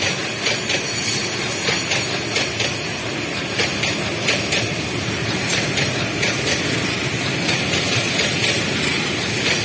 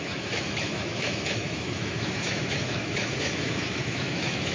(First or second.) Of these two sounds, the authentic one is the first